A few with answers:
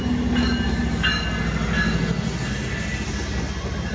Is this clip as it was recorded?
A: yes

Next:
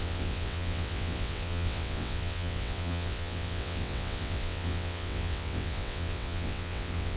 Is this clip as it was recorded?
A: no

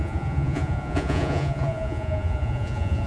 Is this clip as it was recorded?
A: no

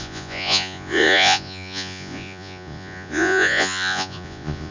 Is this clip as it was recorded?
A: no